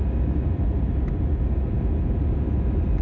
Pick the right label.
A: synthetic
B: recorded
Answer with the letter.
A